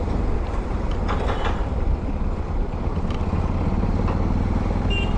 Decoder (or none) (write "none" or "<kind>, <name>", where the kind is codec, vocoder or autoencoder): none